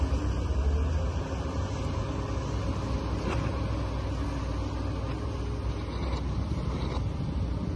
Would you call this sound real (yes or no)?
yes